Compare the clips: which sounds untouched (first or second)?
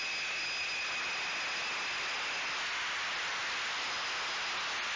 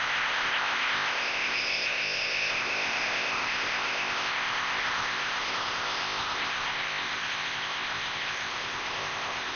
first